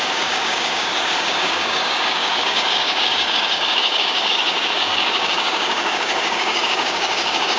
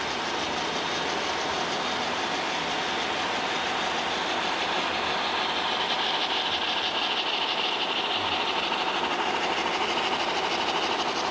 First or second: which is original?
second